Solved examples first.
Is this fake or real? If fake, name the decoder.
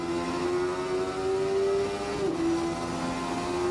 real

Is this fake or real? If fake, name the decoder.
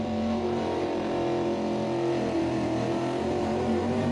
fake, vocoder, BigVGAN v2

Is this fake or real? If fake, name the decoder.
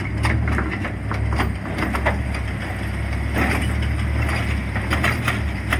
real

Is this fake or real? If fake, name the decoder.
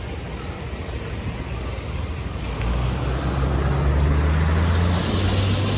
real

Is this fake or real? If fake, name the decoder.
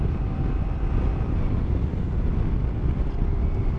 real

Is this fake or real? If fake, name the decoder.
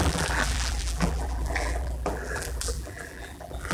fake, vocoder, BigVGAN v2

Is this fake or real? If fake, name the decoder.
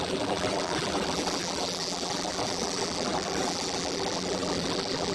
fake, vocoder, BigVGAN v2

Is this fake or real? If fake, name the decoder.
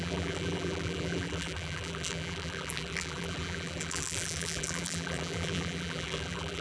fake, vocoder, BigVGAN v2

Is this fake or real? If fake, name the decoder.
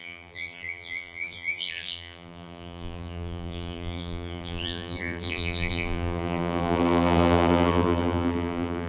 fake, vocoder, BigVGAN v2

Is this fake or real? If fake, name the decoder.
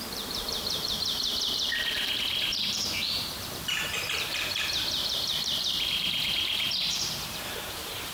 fake, vocoder, BigVGAN v2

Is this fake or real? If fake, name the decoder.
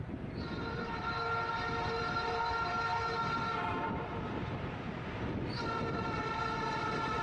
fake, vocoder, BigVGAN v2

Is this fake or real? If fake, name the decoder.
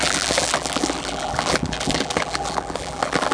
fake, vocoder, BigVGAN v2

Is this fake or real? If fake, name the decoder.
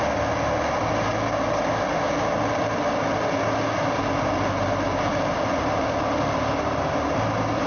real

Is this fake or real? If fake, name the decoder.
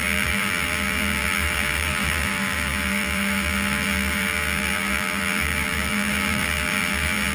fake, vocoder, BigVGAN v2